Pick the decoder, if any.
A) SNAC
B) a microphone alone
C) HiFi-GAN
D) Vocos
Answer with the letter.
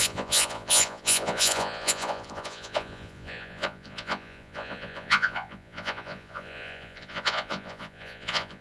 D